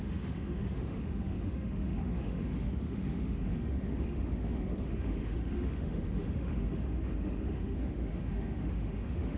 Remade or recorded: remade